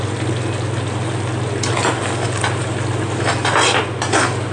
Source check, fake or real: real